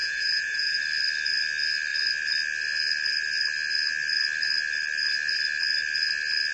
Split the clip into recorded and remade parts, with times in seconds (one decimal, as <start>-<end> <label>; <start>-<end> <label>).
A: 0.0-0.8 remade; 0.8-6.5 recorded